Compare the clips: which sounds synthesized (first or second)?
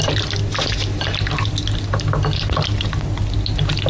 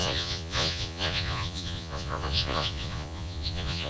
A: second